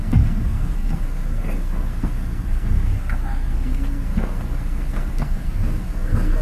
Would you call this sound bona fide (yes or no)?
no